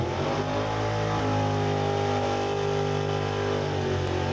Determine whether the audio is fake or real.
real